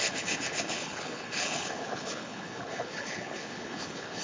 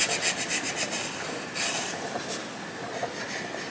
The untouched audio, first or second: second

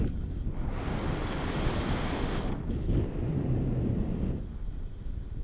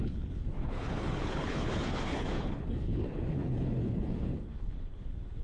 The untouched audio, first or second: first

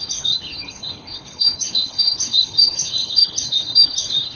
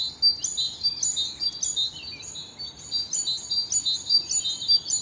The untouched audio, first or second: second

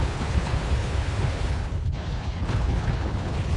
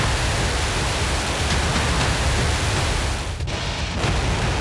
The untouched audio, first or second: second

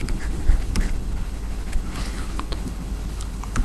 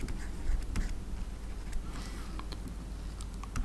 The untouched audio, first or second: second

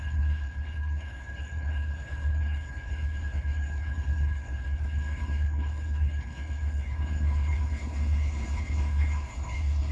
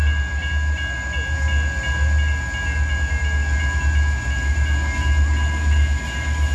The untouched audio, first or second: second